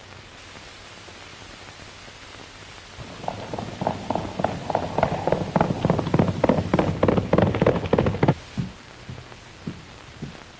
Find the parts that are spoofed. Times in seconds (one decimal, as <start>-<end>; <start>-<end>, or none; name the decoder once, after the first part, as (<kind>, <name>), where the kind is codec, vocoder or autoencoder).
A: none